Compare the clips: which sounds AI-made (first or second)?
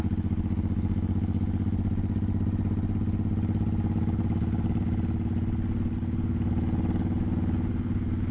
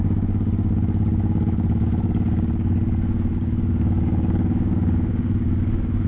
second